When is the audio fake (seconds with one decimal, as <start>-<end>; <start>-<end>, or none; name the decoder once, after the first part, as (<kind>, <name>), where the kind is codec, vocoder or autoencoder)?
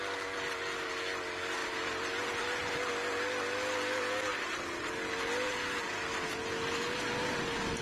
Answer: 1.6-2.9 (vocoder, BigVGAN v2); 4.3-4.9